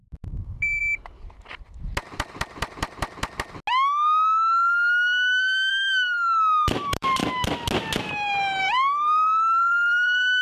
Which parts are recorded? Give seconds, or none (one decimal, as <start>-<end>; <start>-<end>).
0.8-5.7; 7.2-8.0